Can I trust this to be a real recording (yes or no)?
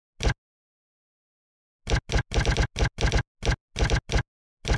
yes